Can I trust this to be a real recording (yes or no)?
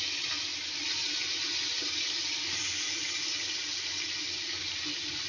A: yes